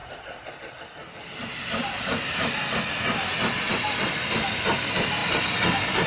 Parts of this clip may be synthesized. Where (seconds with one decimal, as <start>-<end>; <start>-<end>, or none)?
none